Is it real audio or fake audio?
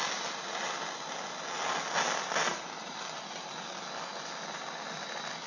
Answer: real